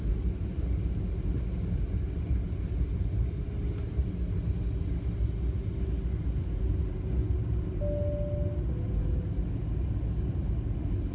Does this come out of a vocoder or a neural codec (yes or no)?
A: no